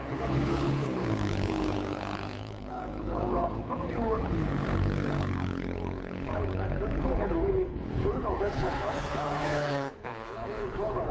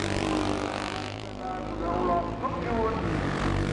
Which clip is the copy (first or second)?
first